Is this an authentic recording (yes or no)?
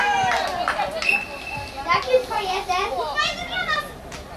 yes